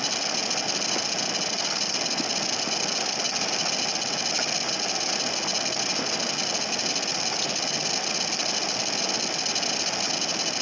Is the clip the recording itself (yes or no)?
yes